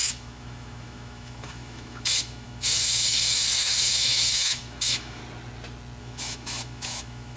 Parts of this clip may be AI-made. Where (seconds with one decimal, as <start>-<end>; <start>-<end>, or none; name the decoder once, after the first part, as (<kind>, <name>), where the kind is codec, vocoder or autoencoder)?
0.0-5.2 (autoencoder, DAC-VAE); 6.0-7.4